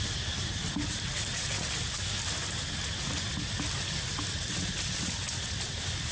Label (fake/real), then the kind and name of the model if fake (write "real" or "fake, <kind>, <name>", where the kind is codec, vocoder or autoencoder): real